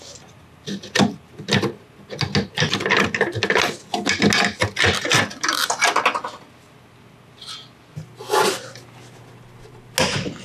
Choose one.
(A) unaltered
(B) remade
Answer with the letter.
A